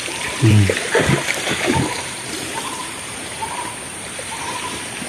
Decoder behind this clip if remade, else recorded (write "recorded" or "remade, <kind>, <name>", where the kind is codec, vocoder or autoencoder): remade, vocoder, BigVGAN v2